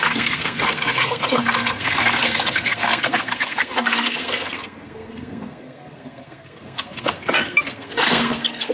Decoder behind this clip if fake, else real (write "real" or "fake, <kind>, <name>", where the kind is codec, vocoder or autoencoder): fake, codec, SNAC